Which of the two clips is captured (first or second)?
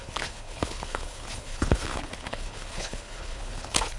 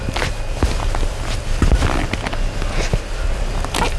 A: second